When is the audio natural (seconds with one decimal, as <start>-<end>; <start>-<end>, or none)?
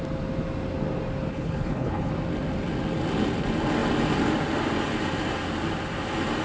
0.0-1.3; 2.1-6.4